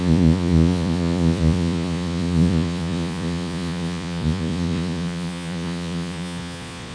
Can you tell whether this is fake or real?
fake